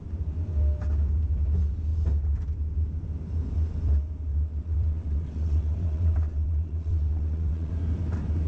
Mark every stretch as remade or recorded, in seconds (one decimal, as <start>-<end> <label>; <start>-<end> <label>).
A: 0.0-4.3 recorded; 4.3-7.7 remade; 7.7-8.5 recorded